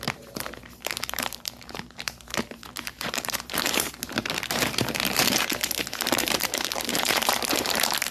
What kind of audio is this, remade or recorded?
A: remade